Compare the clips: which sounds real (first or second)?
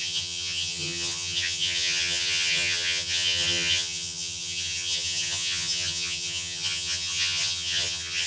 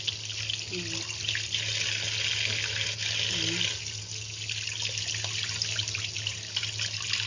second